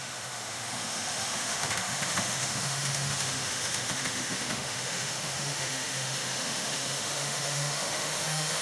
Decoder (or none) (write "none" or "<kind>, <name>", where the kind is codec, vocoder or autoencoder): autoencoder, DAC-VAE